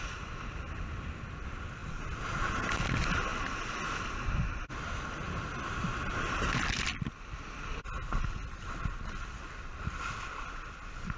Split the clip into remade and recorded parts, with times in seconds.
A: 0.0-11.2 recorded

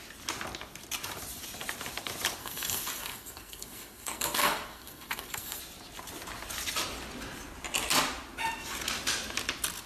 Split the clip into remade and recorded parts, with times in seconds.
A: 0.0-2.4 recorded; 2.4-5.6 remade; 5.6-9.9 recorded

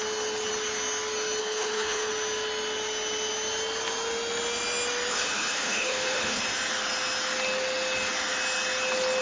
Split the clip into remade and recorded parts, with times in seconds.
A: 0.0-1.4 recorded; 1.4-2.1 remade; 2.1-5.1 recorded; 5.1-6.4 remade; 6.4-9.2 recorded

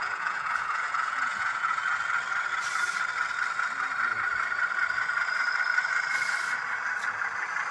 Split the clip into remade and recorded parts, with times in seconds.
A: 0.0-2.0 remade; 2.0-7.7 recorded

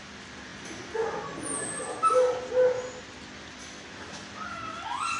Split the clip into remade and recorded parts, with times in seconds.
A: 0.0-5.2 recorded

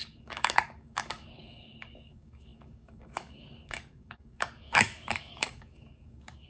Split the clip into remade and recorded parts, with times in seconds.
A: 0.0-6.5 remade

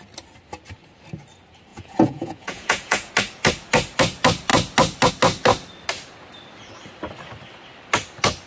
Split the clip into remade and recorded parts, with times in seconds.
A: 0.0-1.7 recorded; 1.7-3.1 remade; 3.1-8.5 recorded